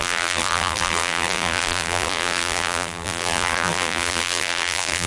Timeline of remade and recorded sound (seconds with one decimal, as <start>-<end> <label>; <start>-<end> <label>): 0.0-5.1 remade